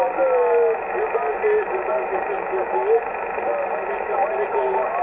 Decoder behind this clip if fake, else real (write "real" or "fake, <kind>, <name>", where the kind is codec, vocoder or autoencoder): real